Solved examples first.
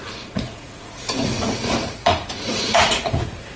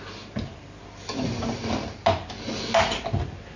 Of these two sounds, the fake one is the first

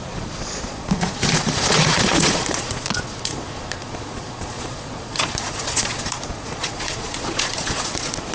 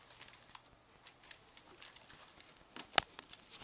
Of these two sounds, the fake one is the first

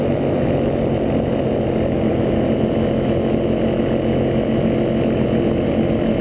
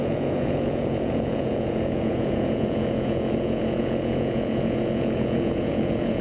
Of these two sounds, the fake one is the second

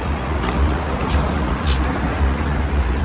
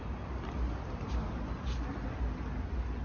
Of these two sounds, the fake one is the first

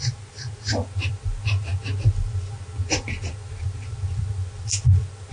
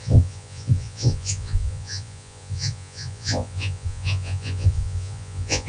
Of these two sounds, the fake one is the second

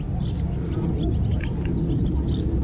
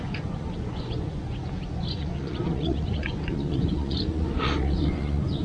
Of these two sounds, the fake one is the second